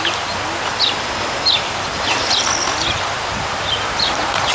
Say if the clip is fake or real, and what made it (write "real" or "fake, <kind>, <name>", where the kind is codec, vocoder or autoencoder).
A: real